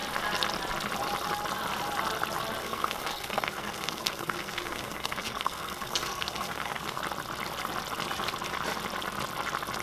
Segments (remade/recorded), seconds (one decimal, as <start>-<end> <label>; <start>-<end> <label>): 0.0-2.6 recorded; 2.6-7.0 remade; 7.0-9.8 recorded